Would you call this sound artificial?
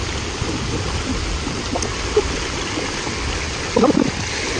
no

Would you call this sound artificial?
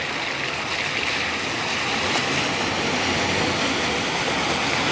no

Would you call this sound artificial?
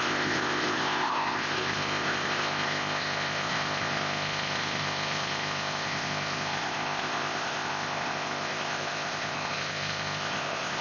yes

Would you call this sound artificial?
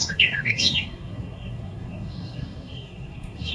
yes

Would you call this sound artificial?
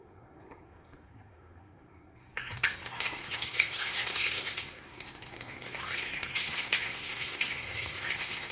yes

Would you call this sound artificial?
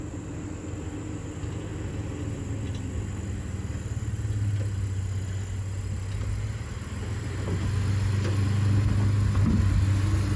no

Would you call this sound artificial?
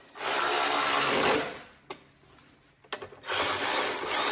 no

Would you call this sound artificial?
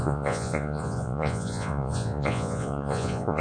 yes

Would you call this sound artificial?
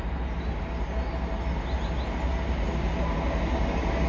no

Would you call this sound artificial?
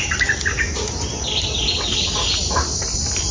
no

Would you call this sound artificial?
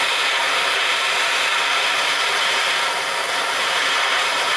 yes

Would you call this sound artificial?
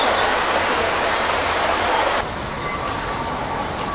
no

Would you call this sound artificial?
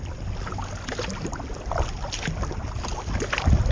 no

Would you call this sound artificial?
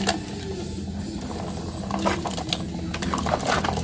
no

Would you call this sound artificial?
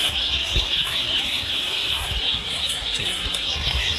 yes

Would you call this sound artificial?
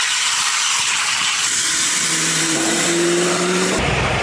yes